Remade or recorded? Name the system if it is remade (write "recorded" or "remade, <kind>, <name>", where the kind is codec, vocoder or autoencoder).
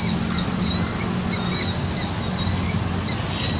recorded